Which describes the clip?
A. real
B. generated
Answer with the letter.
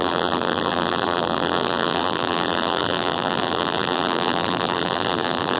B